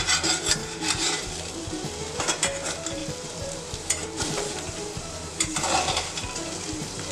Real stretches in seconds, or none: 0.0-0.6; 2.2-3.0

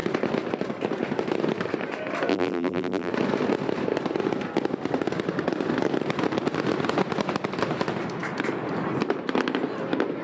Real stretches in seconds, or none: 0.0-2.3; 3.1-10.2

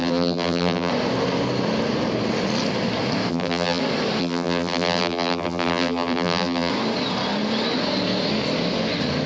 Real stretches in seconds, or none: 0.9-3.3; 3.8-4.2; 6.7-9.3

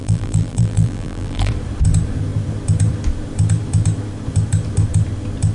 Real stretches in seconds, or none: 1.5-5.5

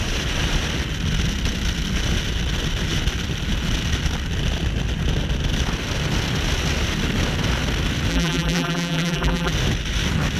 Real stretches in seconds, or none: 0.0-8.1; 9.5-10.4

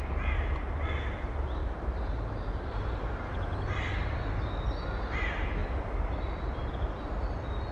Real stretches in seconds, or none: 0.0-1.6; 4.2-5.6; 6.7-7.7

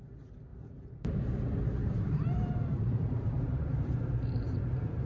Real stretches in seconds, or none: 0.0-0.5; 1.1-1.8